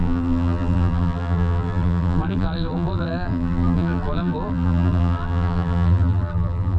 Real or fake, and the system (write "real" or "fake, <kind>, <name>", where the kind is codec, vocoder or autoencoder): fake, vocoder, BigVGAN v2